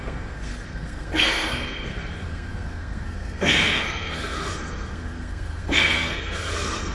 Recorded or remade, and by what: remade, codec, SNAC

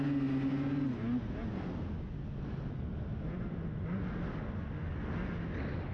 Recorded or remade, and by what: recorded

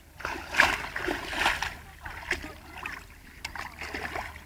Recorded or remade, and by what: recorded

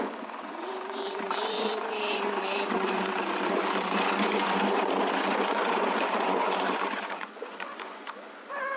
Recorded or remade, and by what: remade, vocoder, Vocos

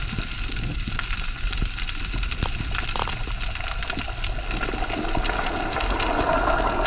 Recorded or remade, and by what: recorded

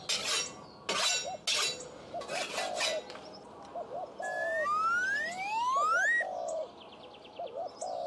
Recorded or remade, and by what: recorded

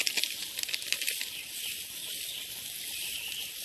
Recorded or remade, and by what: recorded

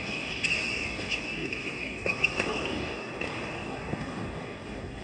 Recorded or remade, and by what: remade, codec, DAC